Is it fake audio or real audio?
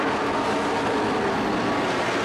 real